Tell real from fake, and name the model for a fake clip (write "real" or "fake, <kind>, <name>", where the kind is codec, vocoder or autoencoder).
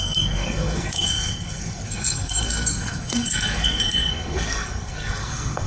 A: fake, codec, SNAC